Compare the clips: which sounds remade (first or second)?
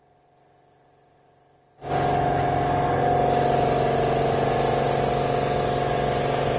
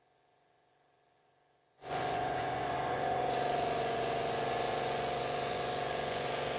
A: second